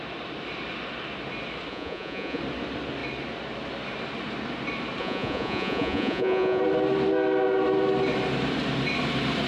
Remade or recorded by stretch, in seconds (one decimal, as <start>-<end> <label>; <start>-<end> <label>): 0.0-1.7 recorded; 1.7-2.4 remade; 2.4-5.0 recorded; 5.0-6.6 remade; 6.6-9.5 recorded